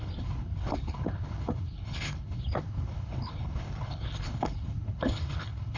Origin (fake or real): fake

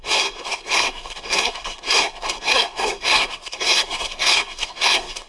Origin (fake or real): fake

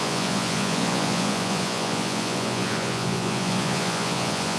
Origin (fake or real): fake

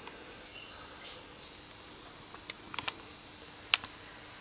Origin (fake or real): real